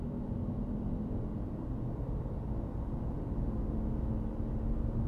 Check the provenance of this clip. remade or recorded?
recorded